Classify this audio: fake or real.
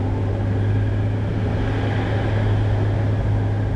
real